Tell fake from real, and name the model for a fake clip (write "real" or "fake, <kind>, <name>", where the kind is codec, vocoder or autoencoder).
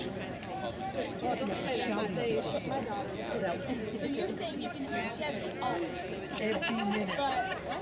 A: real